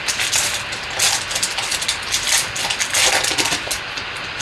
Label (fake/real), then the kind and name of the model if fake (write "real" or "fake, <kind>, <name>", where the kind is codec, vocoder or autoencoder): real